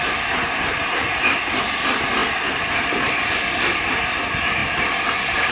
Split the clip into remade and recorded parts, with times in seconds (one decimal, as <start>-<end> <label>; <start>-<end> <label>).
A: 0.0-5.5 recorded